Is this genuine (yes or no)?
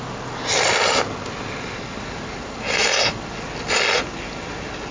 yes